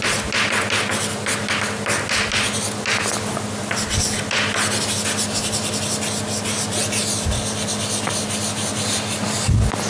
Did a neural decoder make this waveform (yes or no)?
no